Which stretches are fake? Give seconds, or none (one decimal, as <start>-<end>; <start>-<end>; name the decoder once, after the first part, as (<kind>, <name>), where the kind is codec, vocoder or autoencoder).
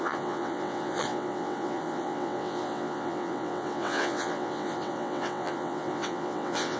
0.0-6.8 (vocoder, WaveNeXt)